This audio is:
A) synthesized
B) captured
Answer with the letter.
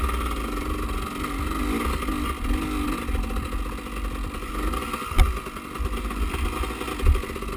B